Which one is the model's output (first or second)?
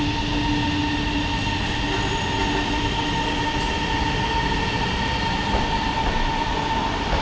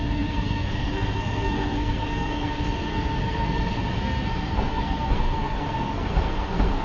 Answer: second